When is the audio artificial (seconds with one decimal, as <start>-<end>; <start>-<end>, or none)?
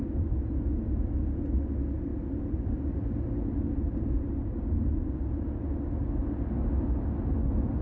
none